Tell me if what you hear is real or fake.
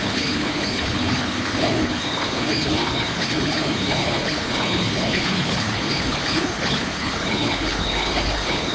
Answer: fake